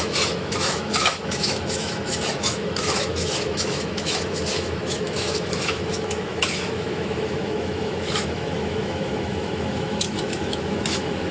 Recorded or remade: remade